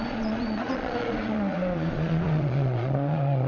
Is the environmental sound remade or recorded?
remade